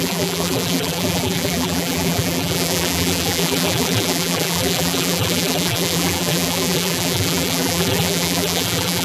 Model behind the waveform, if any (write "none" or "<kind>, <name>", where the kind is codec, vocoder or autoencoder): vocoder, BigVGAN v2